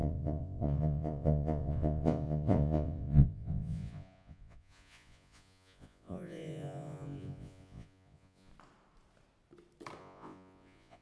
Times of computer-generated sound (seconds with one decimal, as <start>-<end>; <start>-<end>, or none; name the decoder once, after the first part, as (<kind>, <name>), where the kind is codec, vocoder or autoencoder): 0.0-8.5 (vocoder, Vocos); 10.0-11.0